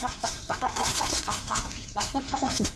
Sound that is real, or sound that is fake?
fake